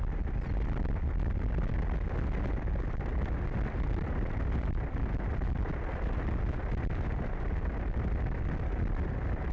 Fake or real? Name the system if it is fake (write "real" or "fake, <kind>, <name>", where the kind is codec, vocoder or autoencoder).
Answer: real